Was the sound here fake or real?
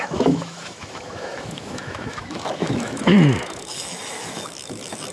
fake